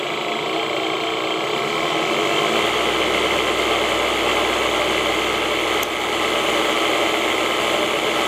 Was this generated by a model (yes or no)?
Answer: no